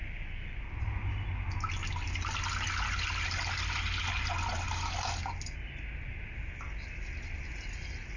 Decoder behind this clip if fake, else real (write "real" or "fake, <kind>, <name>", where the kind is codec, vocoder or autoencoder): real